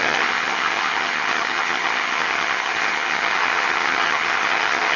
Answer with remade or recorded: remade